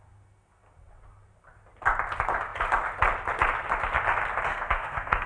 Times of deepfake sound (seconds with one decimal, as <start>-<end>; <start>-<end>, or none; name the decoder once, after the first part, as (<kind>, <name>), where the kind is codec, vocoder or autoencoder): 4.5-5.3 (codec, SNAC)